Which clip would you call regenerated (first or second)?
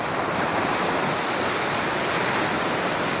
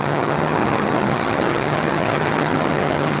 second